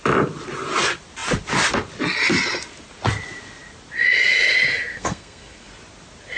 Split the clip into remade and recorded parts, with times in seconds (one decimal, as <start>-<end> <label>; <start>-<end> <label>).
0.0-4.9 recorded; 4.9-5.7 remade; 5.7-6.4 recorded